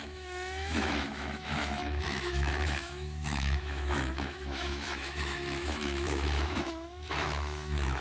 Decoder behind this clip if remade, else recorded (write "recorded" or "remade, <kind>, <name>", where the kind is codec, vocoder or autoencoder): remade, autoencoder, DAC-VAE